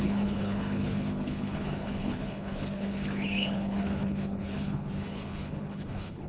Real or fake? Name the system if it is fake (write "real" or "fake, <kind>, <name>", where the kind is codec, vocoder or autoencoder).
fake, codec, HILCodec